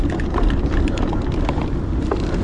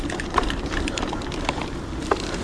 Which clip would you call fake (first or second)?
second